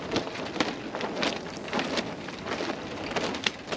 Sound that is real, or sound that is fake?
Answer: real